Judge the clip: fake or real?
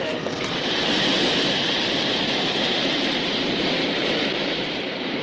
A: fake